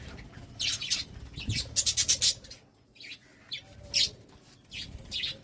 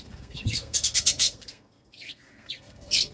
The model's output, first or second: second